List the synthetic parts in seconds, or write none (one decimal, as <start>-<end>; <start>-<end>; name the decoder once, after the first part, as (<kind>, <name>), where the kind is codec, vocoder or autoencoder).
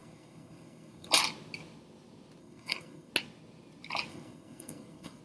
0.0-1.1 (codec, SNAC); 2.4-3.1; 4.1-5.2